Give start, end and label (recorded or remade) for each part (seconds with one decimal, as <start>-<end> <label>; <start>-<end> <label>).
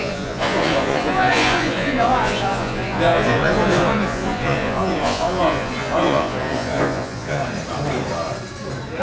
0.0-7.4 remade; 7.4-9.0 recorded